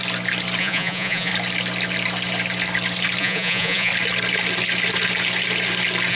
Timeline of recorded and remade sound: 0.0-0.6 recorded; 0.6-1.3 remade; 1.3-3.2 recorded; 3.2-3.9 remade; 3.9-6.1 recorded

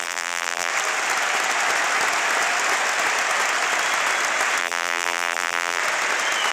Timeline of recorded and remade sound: 0.0-0.7 remade; 0.7-4.6 recorded; 4.6-5.8 remade; 5.8-6.5 recorded